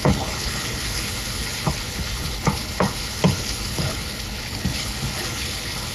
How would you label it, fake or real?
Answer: fake